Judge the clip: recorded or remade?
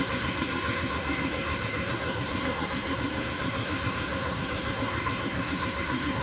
remade